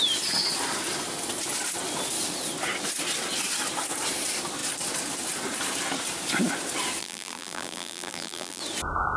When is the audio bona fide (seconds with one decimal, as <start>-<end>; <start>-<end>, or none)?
0.0-7.0; 8.6-9.2